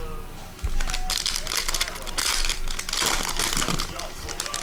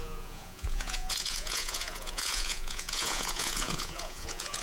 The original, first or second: first